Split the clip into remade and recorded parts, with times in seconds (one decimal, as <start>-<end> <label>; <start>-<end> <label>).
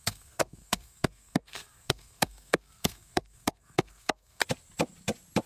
0.0-4.4 remade; 4.4-5.5 recorded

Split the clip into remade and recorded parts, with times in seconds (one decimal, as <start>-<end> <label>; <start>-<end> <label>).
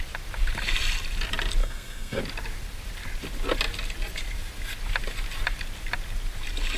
0.0-1.6 recorded; 1.6-2.2 remade; 2.2-6.8 recorded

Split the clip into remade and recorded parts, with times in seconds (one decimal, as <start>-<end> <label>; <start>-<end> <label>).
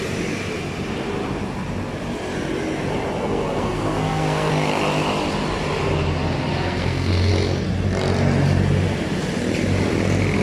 0.0-3.2 recorded; 3.2-4.5 remade; 4.5-6.5 recorded; 6.5-7.3 remade; 7.3-10.4 recorded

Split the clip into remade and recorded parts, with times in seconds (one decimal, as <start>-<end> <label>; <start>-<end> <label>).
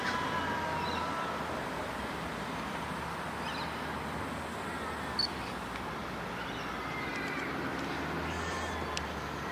0.0-9.5 recorded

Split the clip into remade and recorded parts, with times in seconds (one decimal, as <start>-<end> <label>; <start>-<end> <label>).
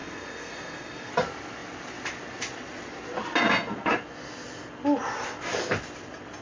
0.0-1.1 remade; 1.1-6.4 recorded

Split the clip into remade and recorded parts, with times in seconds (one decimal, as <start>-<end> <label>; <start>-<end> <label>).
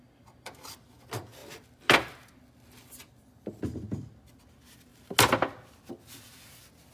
0.0-6.9 recorded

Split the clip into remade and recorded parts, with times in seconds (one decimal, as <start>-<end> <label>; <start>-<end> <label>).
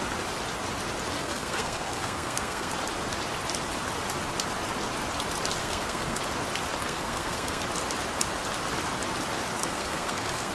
0.0-1.2 recorded; 1.2-2.7 remade; 2.7-5.6 recorded; 5.6-6.2 remade; 6.2-6.8 recorded; 6.8-7.6 remade; 7.6-9.6 recorded; 9.6-10.5 remade